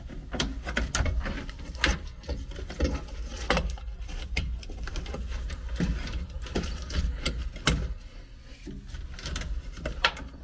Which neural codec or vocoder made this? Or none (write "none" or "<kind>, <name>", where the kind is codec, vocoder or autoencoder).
none